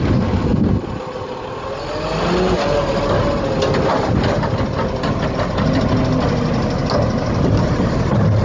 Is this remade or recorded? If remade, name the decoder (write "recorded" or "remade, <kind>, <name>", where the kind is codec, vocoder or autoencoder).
recorded